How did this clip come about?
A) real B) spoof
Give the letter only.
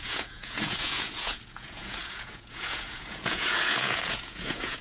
B